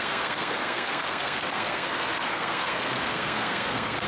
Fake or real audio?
fake